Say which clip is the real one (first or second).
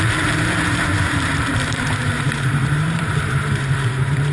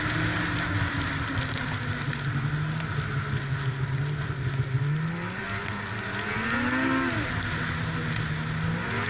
second